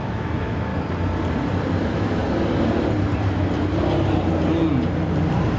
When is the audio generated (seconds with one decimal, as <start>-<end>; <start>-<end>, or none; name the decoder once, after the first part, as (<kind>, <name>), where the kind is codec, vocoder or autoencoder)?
0.0-0.7 (autoencoder, DAC-VAE); 1.8-2.2